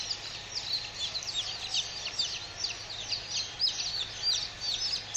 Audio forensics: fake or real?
real